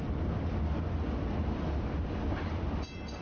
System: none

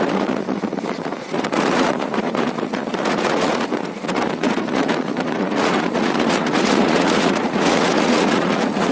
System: vocoder, Vocos